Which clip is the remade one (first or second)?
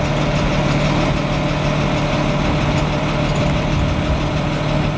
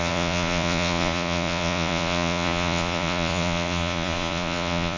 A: second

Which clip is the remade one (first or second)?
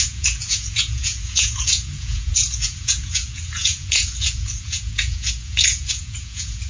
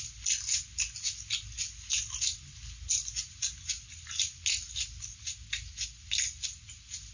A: first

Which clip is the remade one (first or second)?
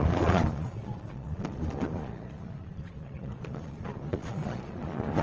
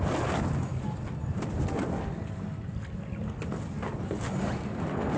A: first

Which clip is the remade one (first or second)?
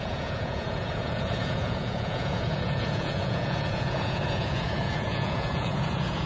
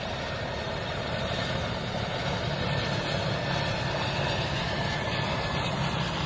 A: first